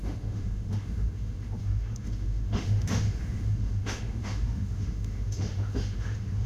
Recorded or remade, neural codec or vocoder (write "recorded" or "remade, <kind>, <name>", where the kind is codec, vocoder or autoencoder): remade, autoencoder, DAC-VAE